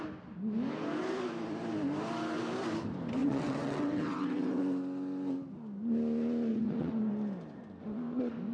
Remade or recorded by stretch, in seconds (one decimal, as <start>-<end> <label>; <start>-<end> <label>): 0.0-3.2 recorded; 3.2-4.6 remade; 4.6-6.5 recorded; 6.5-7.1 remade; 7.1-8.5 recorded